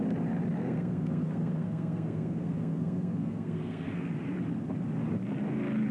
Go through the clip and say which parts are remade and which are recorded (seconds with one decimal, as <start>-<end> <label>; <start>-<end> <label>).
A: 0.0-0.6 recorded; 0.6-4.1 remade; 4.1-5.9 recorded